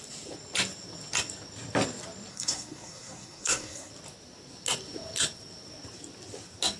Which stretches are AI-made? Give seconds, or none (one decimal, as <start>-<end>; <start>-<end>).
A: 2.3-3.9